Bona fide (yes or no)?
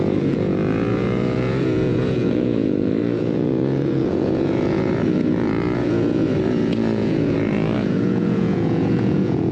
no